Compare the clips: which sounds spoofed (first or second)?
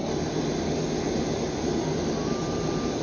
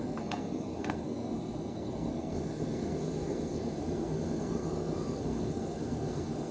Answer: second